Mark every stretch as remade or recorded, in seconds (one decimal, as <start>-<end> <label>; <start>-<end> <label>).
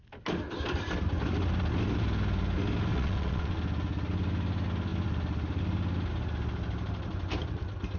0.0-2.9 recorded; 2.9-3.6 remade; 3.6-8.0 recorded